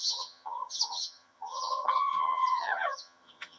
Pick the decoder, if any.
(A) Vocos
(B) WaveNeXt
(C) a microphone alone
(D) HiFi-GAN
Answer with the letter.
D